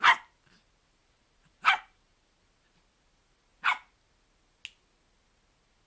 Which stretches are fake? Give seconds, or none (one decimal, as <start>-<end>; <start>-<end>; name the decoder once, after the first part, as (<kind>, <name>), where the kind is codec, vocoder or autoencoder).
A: 1.0-2.1 (vocoder, BigVGAN v2)